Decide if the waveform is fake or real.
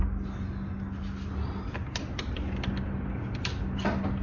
real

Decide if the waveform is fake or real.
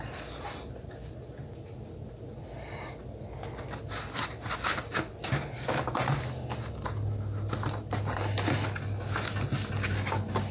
real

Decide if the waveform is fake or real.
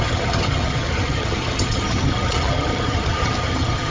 fake